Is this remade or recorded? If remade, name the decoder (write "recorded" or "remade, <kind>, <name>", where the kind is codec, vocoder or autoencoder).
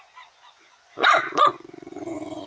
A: remade, vocoder, Vocos